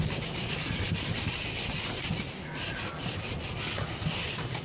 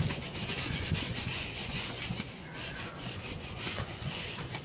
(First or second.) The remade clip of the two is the second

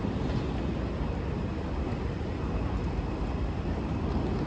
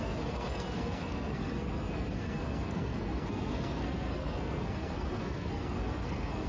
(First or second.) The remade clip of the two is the second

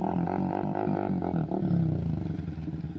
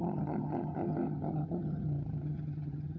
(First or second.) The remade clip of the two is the second